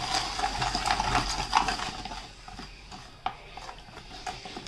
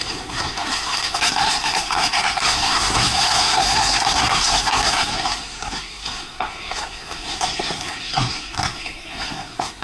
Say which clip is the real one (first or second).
first